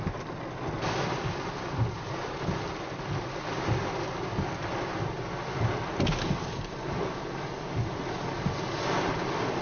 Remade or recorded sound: recorded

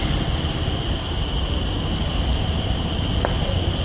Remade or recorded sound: recorded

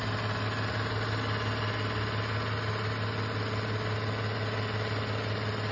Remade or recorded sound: recorded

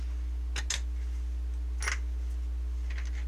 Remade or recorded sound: recorded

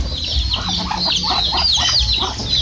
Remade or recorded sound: recorded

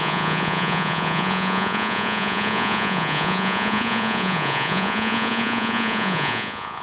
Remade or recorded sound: remade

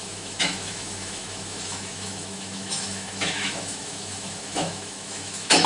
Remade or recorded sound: remade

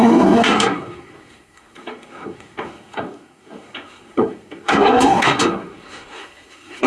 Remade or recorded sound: remade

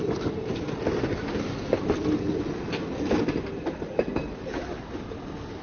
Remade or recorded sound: recorded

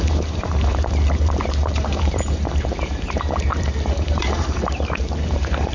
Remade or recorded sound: remade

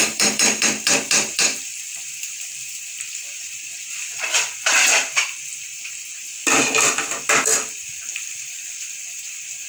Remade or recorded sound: remade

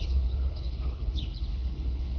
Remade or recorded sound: remade